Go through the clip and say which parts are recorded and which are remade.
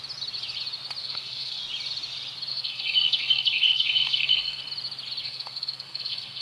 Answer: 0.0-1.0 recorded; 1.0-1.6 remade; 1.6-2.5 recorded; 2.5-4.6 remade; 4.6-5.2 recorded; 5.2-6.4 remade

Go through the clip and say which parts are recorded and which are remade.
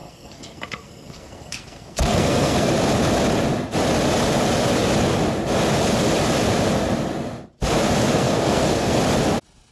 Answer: 0.0-2.7 remade; 2.7-8.1 recorded; 8.1-9.0 remade; 9.0-9.7 recorded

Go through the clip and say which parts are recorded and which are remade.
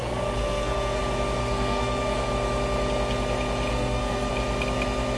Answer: 0.0-0.4 recorded; 0.4-1.0 remade; 1.0-1.4 recorded; 1.4-2.3 remade; 2.3-3.7 recorded; 3.7-4.3 remade; 4.3-5.2 recorded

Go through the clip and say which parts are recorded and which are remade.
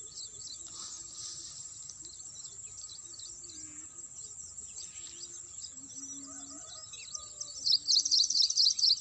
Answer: 0.0-9.0 recorded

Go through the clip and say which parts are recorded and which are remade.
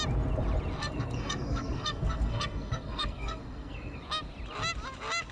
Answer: 0.0-0.8 recorded; 0.8-4.0 remade; 4.0-5.3 recorded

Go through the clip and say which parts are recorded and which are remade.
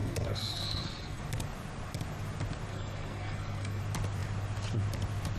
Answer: 0.0-1.2 remade; 1.2-2.7 recorded; 2.7-3.8 remade; 3.8-5.4 recorded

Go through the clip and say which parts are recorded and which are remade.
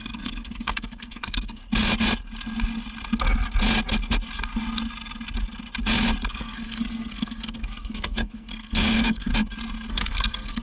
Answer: 0.0-1.6 remade; 1.6-6.3 recorded; 6.3-9.3 remade; 9.3-9.9 recorded; 9.9-10.6 remade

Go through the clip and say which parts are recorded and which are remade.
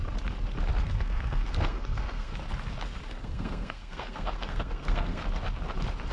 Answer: 0.0-0.8 recorded; 0.8-2.3 remade; 2.3-3.2 recorded; 3.2-5.2 remade; 5.2-6.1 recorded